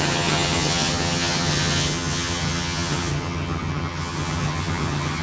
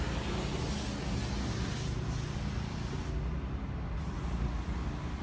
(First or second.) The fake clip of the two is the first